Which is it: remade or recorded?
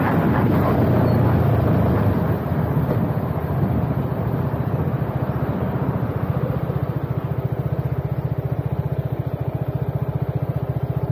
recorded